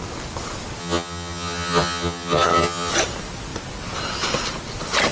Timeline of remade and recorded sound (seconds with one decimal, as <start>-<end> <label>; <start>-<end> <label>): 0.0-0.8 recorded; 0.8-2.9 remade; 2.9-5.1 recorded